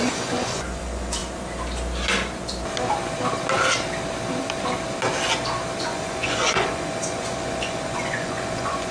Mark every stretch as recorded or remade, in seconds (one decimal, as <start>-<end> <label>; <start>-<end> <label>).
0.0-1.2 remade; 1.2-5.8 recorded; 5.8-8.9 remade